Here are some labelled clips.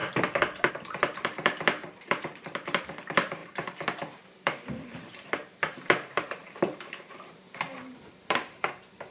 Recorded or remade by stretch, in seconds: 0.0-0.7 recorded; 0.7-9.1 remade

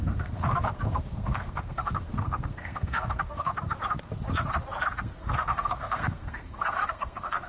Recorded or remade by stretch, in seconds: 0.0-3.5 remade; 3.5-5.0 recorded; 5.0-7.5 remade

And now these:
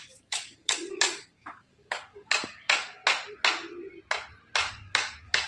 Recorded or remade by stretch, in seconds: 0.0-3.0 remade; 3.0-4.7 recorded; 4.7-5.5 remade

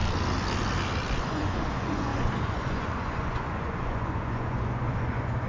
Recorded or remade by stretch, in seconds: 0.0-1.2 recorded; 1.2-5.5 remade

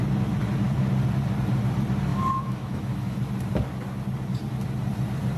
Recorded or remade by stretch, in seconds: 0.0-2.1 recorded; 2.1-3.2 remade; 3.2-5.4 recorded

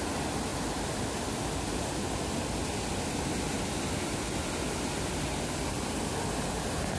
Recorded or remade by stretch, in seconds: 0.0-7.0 recorded